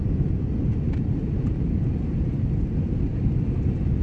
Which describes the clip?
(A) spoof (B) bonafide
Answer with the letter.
B